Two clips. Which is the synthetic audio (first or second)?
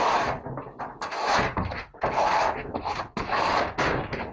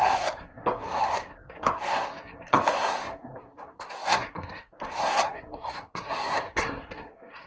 second